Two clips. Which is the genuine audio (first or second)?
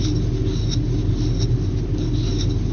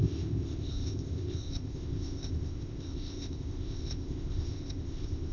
first